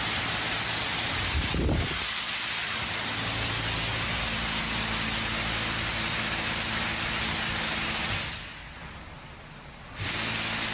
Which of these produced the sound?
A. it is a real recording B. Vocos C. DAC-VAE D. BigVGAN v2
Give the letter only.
A